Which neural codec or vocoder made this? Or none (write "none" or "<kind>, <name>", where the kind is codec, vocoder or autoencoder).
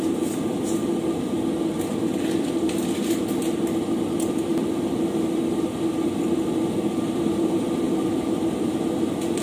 none